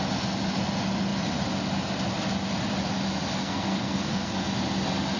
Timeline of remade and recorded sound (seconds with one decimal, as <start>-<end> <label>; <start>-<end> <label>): 0.0-3.4 recorded; 3.4-4.5 remade; 4.5-5.2 recorded